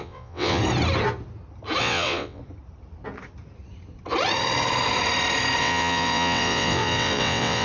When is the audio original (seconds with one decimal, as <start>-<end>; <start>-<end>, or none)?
0.6-1.8; 2.4-5.6